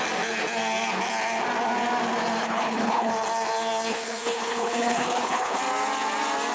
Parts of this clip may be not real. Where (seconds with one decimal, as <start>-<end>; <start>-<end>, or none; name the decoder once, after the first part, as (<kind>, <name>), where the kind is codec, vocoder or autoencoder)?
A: 2.4-3.1 (codec, HILCodec); 3.9-5.6